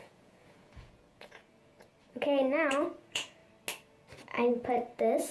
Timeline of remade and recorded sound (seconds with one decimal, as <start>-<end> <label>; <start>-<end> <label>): 0.0-1.9 remade; 1.9-2.7 recorded; 2.7-3.4 remade; 3.4-4.5 recorded; 4.5-5.3 remade